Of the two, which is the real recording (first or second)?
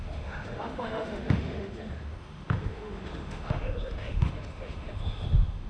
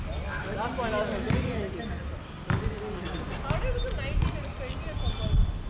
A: second